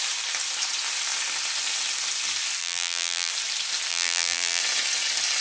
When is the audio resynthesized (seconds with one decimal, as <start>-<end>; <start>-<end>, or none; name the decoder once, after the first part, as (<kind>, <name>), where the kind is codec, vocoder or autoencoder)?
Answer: 2.6-3.3 (vocoder, BigVGAN v2); 3.9-4.6